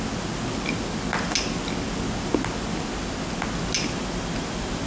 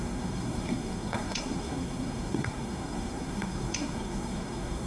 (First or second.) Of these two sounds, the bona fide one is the first